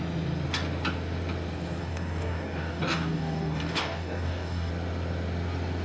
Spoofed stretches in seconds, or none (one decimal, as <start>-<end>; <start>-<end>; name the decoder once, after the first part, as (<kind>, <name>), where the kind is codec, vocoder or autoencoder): 1.8-4.7 (codec, DAC)